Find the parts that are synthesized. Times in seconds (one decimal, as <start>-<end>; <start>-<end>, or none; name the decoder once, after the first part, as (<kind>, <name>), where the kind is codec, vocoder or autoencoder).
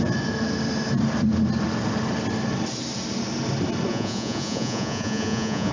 3.9-5.7 (vocoder, Vocos)